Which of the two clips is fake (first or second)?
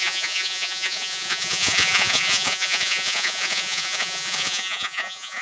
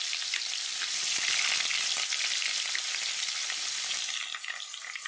first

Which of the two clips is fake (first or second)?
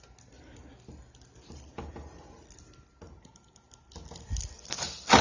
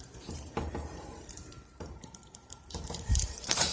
second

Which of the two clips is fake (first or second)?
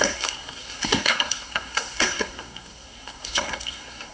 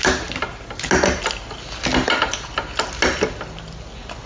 first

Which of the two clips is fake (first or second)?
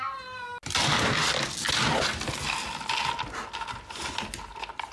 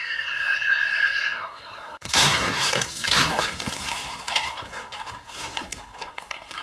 second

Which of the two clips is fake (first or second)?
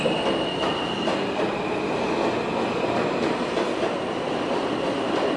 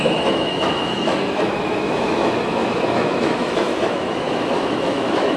second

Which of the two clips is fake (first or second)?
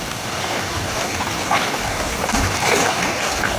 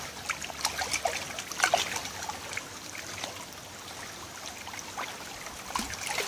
first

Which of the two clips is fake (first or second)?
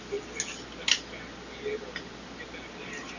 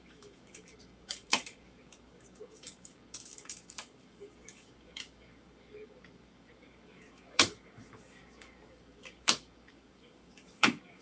second